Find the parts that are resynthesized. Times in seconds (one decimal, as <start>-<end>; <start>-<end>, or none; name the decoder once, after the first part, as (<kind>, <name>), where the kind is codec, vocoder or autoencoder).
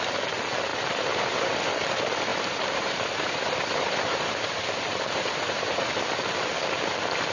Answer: 0.7-1.6 (vocoder, BigVGAN v2); 2.3-5.9